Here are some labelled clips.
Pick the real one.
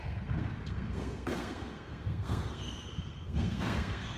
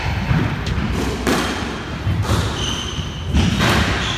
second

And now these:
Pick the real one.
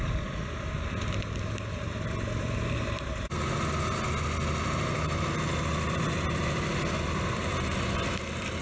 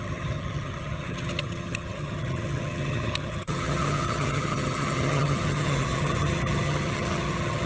first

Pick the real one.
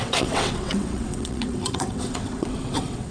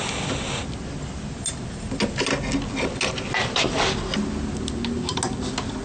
second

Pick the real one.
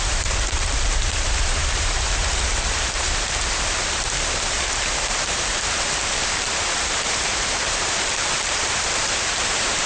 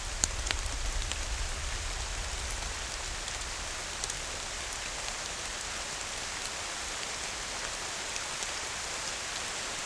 second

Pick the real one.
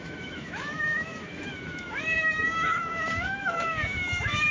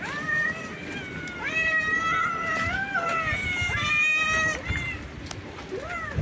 second